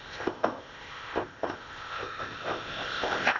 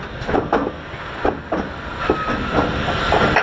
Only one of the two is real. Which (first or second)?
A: second